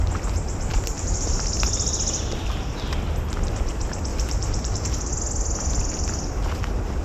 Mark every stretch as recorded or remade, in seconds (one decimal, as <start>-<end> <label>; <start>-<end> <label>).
0.0-0.7 recorded; 0.7-1.3 remade; 1.3-4.1 recorded; 4.1-5.1 remade; 5.1-7.0 recorded